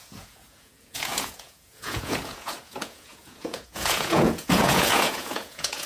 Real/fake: fake